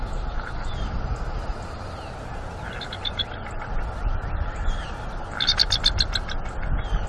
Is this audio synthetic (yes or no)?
no